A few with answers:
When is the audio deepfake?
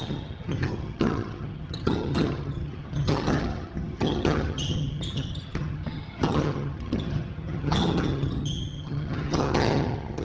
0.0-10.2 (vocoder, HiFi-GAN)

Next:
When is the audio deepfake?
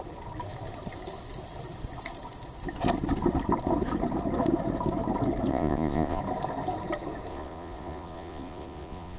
5.5-6.2 (vocoder, Vocos); 7.3-9.2